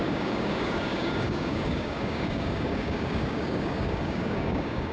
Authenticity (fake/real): fake